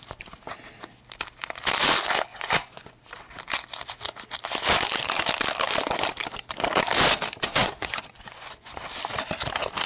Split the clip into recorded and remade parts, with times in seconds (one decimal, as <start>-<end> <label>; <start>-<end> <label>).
0.0-2.3 recorded; 2.3-2.9 remade; 2.9-7.6 recorded; 7.6-8.7 remade; 8.7-9.9 recorded